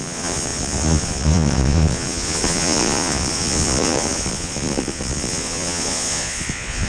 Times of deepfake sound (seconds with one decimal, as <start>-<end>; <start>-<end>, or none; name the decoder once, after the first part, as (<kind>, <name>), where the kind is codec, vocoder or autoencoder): 0.0-6.9 (vocoder, Vocos)